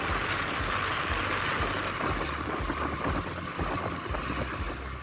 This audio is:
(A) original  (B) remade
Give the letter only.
A